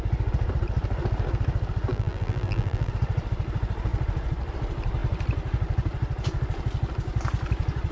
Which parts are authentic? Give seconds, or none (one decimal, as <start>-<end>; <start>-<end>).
0.0-1.9; 2.9-7.9